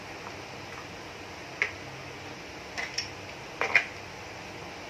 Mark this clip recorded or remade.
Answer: recorded